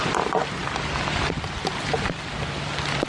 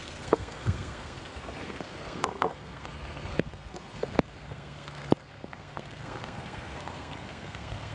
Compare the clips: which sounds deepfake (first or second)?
second